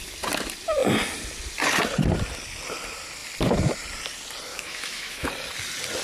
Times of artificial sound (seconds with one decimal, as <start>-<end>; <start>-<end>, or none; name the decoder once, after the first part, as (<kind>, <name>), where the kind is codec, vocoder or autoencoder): 4.5-5.3 (autoencoder, DAC-VAE)

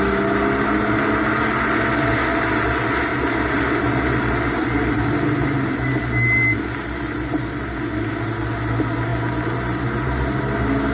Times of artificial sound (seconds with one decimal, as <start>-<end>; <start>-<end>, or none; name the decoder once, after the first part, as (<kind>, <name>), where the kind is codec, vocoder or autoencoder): none

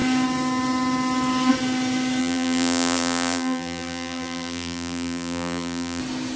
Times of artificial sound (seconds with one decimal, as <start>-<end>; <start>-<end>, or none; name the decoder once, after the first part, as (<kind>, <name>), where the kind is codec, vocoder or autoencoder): 2.2-6.0 (vocoder, BigVGAN v2)

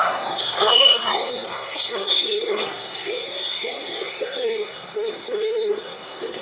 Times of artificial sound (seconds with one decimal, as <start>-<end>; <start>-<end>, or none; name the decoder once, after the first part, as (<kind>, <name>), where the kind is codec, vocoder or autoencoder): 0.0-6.4 (codec, SNAC)

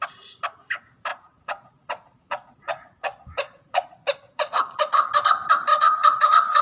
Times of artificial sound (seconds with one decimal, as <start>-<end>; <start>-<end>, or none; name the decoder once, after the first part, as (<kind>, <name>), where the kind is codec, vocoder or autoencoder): 1.1-5.1 (vocoder, Vocos); 5.7-6.6

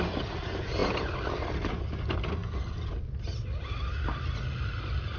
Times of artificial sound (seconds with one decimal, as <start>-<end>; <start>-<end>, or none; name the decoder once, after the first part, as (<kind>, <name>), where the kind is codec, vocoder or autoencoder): none